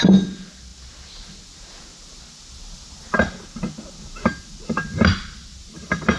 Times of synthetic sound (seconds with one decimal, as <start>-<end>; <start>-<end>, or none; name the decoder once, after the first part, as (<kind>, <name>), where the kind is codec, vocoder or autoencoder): none

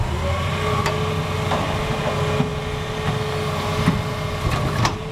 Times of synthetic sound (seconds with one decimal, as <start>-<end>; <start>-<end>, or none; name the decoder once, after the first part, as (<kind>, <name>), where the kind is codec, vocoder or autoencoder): none

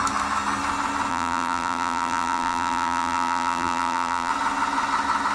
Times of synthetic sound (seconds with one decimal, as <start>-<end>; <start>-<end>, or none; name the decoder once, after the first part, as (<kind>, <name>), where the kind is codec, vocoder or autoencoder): 1.1-4.3 (vocoder, BigVGAN v2)

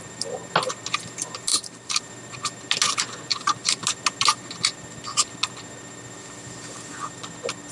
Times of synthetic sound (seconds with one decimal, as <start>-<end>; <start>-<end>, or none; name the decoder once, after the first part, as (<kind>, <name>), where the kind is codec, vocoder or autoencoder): 1.5-2.0 (vocoder, BigVGAN v2); 3.3-3.8

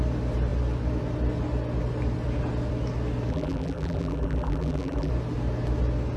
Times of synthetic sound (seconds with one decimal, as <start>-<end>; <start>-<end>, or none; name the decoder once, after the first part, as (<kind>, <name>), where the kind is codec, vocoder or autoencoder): 3.3-5.1 (vocoder, BigVGAN v2)